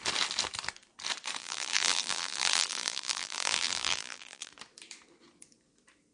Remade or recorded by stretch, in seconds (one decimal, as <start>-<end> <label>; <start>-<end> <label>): 0.0-1.4 recorded; 1.4-4.5 remade; 4.5-6.1 recorded